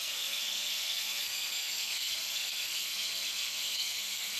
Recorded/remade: remade